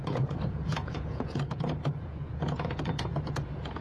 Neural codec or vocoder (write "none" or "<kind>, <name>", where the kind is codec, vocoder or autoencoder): vocoder, Vocos